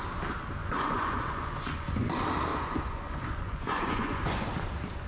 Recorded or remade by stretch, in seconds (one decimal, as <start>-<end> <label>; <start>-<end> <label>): 0.0-0.6 recorded; 0.6-2.1 remade; 2.1-2.5 recorded; 2.5-4.5 remade; 4.5-5.1 recorded